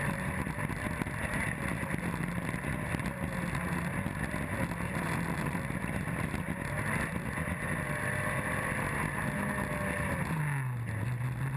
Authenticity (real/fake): real